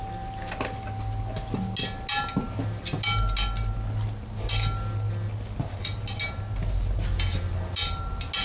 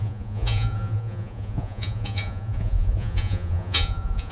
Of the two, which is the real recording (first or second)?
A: first